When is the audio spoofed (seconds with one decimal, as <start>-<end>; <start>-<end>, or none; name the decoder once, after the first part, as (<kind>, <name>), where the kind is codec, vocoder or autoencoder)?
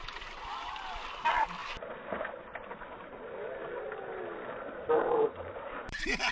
0.0-1.6 (vocoder, BigVGAN v2); 2.2-3.6; 4.9-6.3